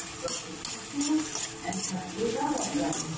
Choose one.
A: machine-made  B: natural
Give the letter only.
B